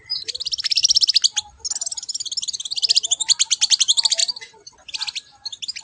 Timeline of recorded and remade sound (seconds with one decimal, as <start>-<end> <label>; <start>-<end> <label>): 0.0-5.8 recorded

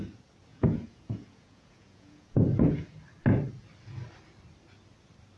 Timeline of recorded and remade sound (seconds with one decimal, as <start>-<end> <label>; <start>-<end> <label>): 0.0-0.5 recorded; 0.5-3.0 remade; 3.0-5.4 recorded

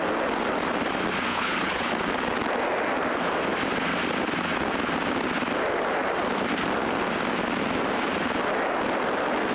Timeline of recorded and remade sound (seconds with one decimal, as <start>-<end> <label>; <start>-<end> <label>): 0.0-1.3 recorded; 1.3-1.9 remade; 1.9-9.5 recorded

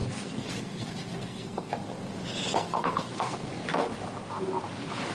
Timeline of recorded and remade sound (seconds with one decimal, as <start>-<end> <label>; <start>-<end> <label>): 0.0-1.7 remade; 1.7-2.5 recorded; 2.5-3.9 remade; 3.9-5.1 recorded

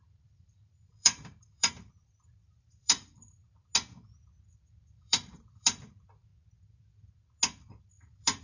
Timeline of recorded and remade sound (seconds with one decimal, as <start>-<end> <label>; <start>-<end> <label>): 0.0-3.4 remade; 3.4-4.8 recorded; 4.8-6.3 remade; 6.3-7.8 recorded; 7.8-8.4 remade